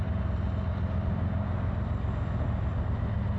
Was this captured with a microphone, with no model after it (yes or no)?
yes